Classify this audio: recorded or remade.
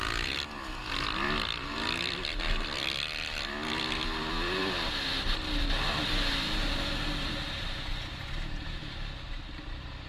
recorded